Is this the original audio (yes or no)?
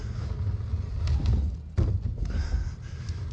yes